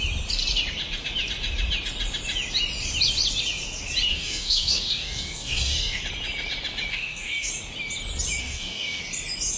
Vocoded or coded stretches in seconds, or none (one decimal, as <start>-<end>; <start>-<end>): 4.1-6.0; 6.9-7.5; 8.4-9.0

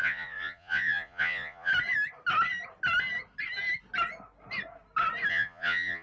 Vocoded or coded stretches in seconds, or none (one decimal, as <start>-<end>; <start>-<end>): 0.0-1.7; 5.3-6.0

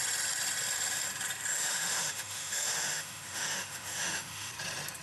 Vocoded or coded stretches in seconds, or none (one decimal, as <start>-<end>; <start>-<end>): 1.5-4.5

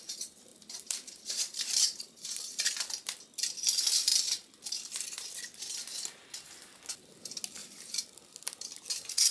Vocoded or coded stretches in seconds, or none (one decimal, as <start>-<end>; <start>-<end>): 0.5-2.5; 7.6-8.1

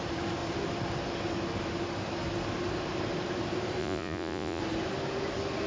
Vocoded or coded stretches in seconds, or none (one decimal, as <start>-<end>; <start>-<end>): 3.8-4.6